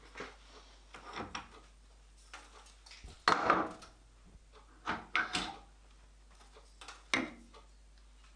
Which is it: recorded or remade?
recorded